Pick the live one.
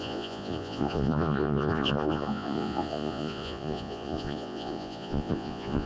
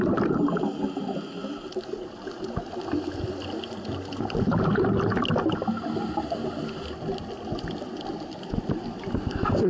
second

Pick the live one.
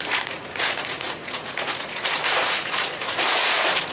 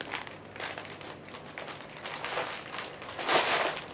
second